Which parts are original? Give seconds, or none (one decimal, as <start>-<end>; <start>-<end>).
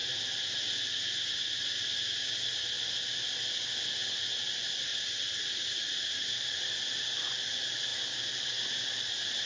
0.0-4.9; 6.4-7.9; 9.0-9.5